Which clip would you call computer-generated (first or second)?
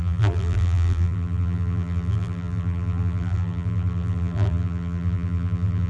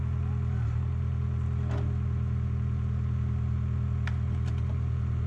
first